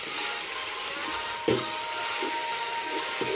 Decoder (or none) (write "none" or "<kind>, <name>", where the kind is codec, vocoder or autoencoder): none